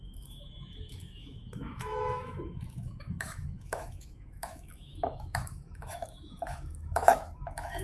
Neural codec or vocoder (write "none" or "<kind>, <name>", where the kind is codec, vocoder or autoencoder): autoencoder, DAC-VAE